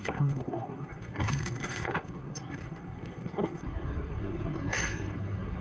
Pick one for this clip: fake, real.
fake